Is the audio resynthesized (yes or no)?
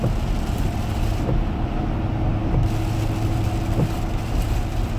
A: no